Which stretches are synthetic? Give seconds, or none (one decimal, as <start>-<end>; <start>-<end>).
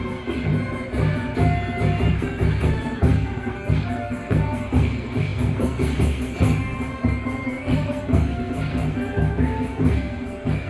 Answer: 0.0-0.5; 2.1-10.7